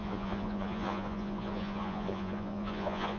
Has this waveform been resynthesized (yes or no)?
yes